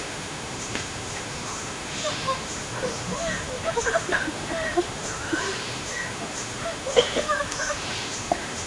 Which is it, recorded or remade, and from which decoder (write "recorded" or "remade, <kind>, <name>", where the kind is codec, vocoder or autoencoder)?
remade, autoencoder, DAC-VAE